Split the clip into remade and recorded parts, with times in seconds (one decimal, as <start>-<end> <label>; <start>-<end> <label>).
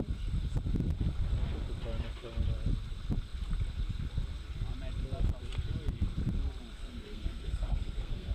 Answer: 0.0-6.8 recorded; 6.8-8.3 remade